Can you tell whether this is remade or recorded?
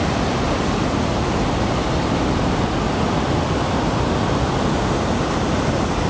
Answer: recorded